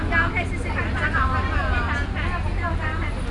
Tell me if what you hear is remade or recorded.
recorded